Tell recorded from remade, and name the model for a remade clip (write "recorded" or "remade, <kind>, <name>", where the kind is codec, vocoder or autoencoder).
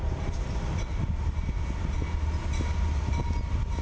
recorded